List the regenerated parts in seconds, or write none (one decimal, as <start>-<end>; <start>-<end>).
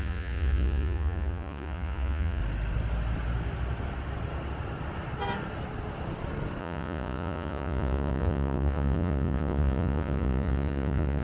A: 0.0-2.4; 6.6-11.2